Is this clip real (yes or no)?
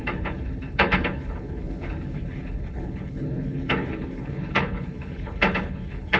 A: no